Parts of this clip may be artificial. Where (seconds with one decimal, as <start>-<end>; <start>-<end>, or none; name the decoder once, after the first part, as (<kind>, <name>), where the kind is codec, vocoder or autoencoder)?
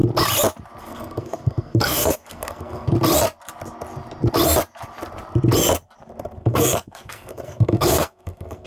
0.8-2.9 (codec, SNAC); 6.4-8.7